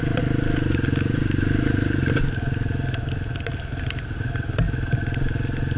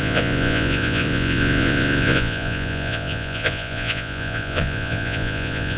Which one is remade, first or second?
second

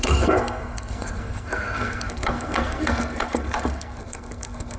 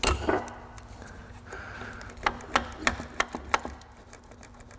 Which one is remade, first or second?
first